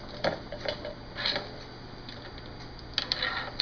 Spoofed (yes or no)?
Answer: no